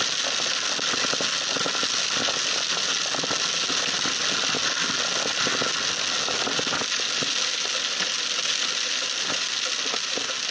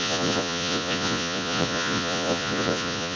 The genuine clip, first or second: first